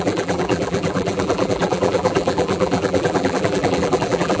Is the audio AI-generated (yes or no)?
yes